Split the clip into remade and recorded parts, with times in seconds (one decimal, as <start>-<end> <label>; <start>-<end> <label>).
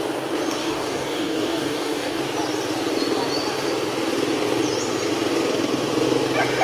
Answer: 0.0-0.6 recorded; 0.6-2.2 remade; 2.2-6.6 recorded